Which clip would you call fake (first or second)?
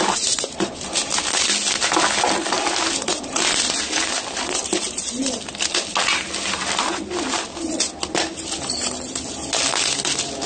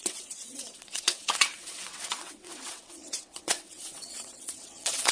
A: second